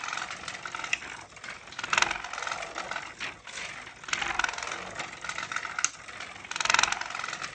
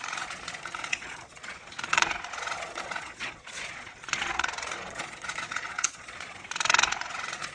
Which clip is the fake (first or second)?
second